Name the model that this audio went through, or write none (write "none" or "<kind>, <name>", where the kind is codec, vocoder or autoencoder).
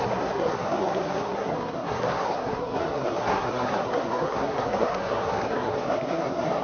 codec, SNAC